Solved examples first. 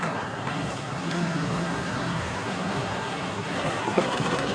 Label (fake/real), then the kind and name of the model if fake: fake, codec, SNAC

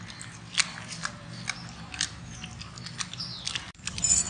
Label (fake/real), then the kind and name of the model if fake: real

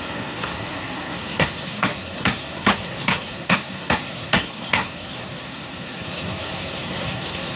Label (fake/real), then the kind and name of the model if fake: fake, codec, SNAC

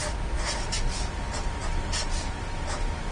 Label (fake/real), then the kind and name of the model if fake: real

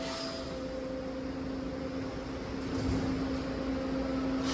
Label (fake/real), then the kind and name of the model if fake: real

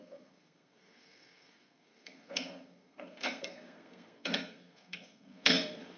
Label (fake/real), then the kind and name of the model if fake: fake, codec, SNAC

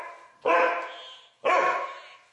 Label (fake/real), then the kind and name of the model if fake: real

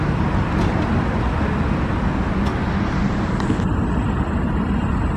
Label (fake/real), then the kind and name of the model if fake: real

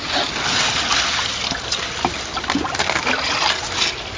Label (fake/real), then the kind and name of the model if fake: real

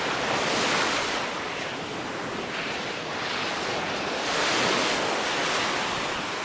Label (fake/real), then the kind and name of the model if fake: real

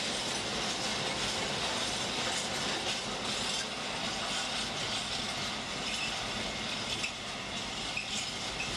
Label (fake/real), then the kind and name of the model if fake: real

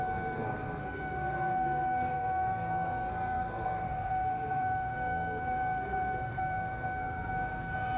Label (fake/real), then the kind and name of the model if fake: fake, codec, SNAC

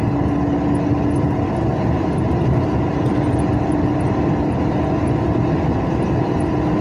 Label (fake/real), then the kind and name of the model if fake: real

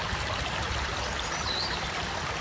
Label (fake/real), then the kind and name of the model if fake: real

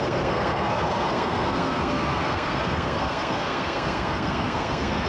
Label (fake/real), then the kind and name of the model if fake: fake, codec, SNAC